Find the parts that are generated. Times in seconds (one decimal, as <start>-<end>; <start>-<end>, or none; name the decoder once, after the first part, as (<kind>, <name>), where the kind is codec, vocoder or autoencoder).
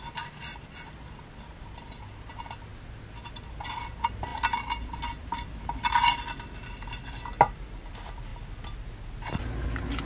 0.5-2.3 (vocoder, BigVGAN v2); 4.3-7.9